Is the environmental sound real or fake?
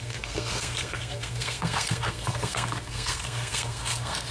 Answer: fake